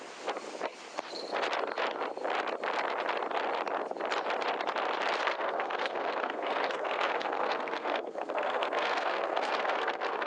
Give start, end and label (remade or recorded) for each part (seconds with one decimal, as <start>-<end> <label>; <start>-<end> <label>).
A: 0.0-5.2 recorded; 5.2-10.3 remade